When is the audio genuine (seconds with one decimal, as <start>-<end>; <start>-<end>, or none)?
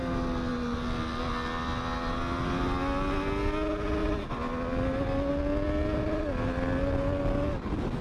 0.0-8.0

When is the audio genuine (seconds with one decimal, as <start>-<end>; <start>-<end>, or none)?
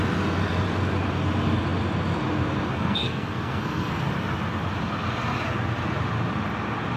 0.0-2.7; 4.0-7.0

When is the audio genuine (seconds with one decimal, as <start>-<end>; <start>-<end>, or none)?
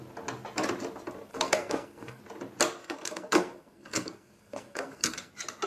0.0-1.3; 2.2-2.8; 5.3-5.7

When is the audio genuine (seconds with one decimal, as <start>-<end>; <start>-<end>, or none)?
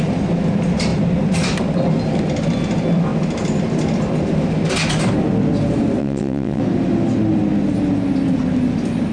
0.0-6.0; 6.6-9.1